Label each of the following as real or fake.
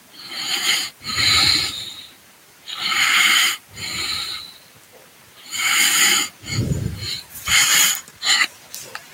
fake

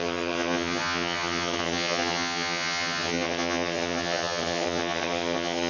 fake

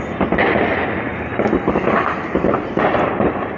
real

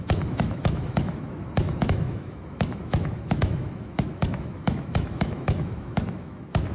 fake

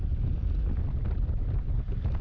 real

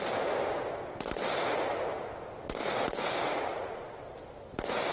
real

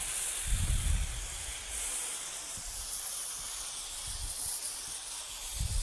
real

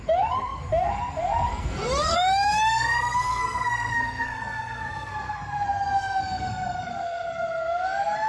fake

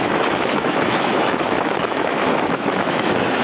fake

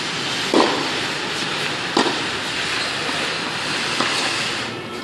real